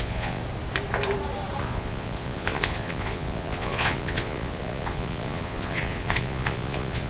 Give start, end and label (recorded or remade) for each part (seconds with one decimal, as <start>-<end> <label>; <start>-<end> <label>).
0.0-0.4 remade; 0.4-1.6 recorded; 1.6-7.1 remade

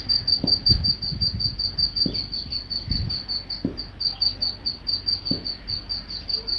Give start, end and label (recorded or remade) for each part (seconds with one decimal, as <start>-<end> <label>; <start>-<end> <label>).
0.0-0.6 recorded; 0.6-1.4 remade; 1.4-6.6 recorded

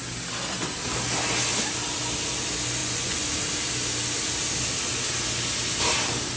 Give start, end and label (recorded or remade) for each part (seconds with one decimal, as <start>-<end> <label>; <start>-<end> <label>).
0.0-2.8 recorded; 2.8-3.3 remade; 3.3-6.4 recorded

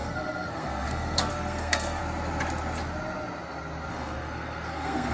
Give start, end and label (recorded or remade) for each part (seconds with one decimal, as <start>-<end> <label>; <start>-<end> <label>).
0.0-2.0 remade; 2.0-3.9 recorded; 3.9-5.1 remade

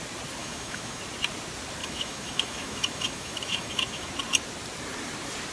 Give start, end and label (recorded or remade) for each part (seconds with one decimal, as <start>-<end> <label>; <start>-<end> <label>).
0.0-0.4 recorded; 0.4-1.0 remade; 1.0-1.8 recorded; 1.8-4.1 remade; 4.1-5.5 recorded